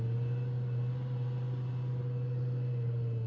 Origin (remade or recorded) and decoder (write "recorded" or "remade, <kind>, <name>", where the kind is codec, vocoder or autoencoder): recorded